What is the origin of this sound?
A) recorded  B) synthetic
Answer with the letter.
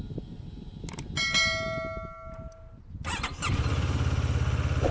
A